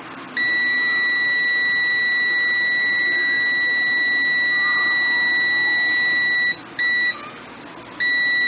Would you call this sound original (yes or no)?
yes